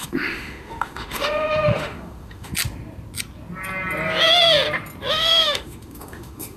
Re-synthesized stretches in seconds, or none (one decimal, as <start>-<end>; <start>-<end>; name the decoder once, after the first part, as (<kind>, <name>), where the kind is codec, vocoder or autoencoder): 0.0-2.5 (autoencoder, DAC-VAE); 5.1-6.6